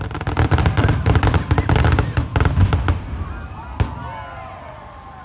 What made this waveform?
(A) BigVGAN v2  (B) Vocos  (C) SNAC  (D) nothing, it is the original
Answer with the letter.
D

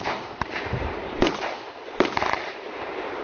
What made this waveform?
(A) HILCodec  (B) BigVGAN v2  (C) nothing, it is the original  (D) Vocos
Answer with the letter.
B